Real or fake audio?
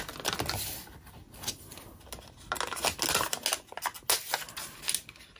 real